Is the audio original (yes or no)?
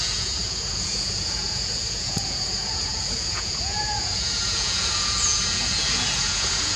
no